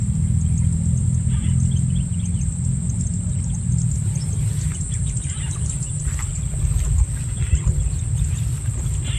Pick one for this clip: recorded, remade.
recorded